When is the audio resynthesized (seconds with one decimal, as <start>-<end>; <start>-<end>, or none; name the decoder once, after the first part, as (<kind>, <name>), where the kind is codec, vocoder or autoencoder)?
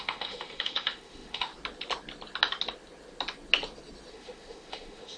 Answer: 0.0-1.5 (autoencoder, DAC-VAE); 4.1-5.2